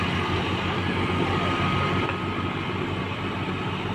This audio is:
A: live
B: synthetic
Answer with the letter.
A